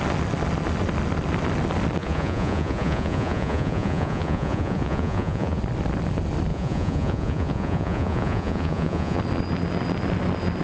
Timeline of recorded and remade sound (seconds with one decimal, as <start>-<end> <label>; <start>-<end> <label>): 0.0-2.0 recorded; 2.0-5.6 remade; 5.6-6.5 recorded; 6.5-9.2 remade; 9.2-10.6 recorded